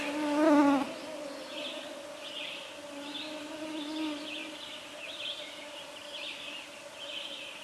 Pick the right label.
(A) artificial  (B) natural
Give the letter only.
B